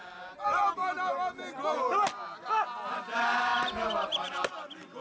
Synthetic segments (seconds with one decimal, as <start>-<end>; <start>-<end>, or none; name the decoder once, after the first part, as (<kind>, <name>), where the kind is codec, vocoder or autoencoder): none